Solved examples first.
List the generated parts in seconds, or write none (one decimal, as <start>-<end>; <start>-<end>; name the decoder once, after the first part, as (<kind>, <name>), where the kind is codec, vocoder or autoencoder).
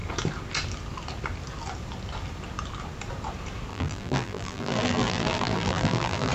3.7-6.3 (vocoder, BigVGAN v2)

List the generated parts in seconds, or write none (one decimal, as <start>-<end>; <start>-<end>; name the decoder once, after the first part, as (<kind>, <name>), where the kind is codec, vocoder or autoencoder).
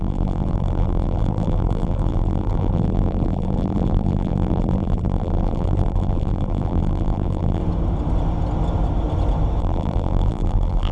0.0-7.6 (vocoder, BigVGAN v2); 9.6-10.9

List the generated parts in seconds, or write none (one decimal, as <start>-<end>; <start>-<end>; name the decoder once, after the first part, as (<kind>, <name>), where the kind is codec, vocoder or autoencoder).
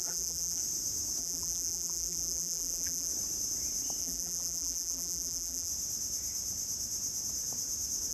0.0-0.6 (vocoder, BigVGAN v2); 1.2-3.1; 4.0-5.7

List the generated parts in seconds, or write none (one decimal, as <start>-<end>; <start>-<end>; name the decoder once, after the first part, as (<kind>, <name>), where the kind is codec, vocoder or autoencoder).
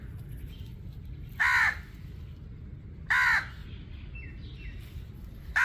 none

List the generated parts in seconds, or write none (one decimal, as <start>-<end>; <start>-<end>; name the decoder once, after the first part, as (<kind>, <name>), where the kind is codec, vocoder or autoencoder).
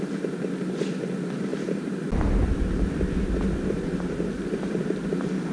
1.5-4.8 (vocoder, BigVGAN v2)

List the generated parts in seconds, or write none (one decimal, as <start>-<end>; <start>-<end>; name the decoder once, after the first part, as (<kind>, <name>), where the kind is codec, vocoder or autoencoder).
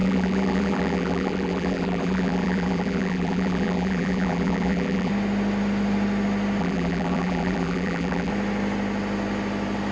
0.0-5.1 (vocoder, BigVGAN v2); 6.6-8.3